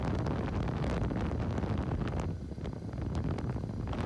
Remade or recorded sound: recorded